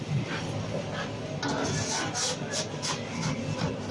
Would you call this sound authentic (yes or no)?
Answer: yes